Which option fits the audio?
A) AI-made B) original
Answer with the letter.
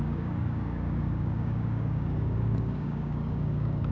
A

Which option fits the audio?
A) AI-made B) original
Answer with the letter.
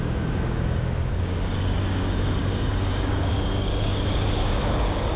A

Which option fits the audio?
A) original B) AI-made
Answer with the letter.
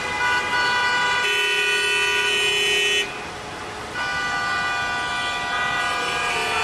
A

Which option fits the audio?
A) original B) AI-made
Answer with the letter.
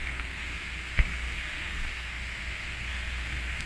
B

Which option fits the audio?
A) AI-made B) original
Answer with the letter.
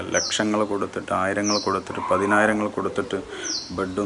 B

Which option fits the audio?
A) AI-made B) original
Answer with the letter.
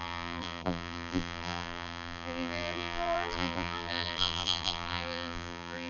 A